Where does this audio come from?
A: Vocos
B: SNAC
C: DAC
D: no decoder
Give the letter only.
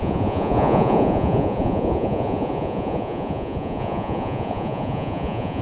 A